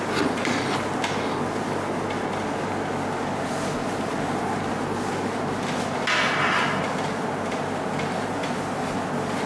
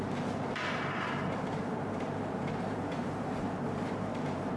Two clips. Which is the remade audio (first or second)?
second